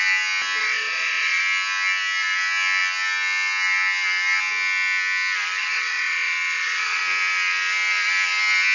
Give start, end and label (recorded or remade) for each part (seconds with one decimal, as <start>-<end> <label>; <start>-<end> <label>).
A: 0.0-0.6 recorded; 0.6-1.4 remade; 1.4-5.6 recorded; 5.6-7.0 remade; 7.0-8.7 recorded